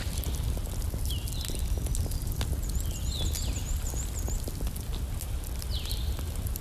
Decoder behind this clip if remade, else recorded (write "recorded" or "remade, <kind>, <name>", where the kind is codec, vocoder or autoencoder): recorded